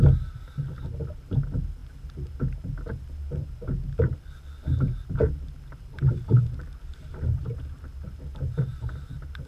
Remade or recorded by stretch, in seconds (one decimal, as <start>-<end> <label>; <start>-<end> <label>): 0.0-9.5 recorded